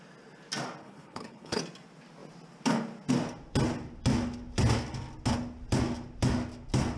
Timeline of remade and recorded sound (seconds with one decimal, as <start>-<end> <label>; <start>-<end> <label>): 0.0-0.8 recorded; 0.8-1.6 remade; 1.6-7.0 recorded